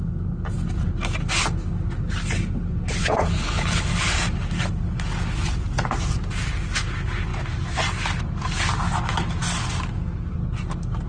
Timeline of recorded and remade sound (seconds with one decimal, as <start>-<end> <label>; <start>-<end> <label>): 0.0-3.0 recorded; 3.0-4.2 remade; 4.2-11.1 recorded

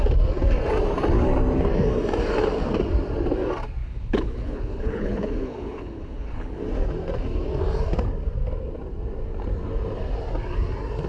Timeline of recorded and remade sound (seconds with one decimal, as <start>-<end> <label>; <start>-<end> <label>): 0.0-3.8 recorded; 3.8-6.6 remade; 6.6-11.1 recorded

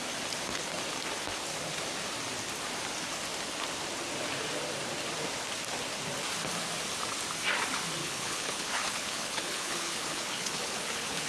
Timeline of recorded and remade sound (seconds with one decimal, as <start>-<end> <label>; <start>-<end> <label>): 0.0-8.0 recorded; 8.0-11.3 remade

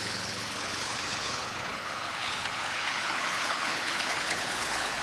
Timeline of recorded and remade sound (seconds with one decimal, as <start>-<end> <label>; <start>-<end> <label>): 0.0-5.0 remade